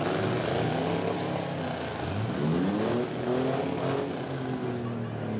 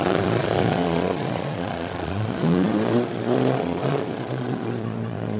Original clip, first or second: first